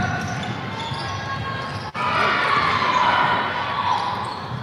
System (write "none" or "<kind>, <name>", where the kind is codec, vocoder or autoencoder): none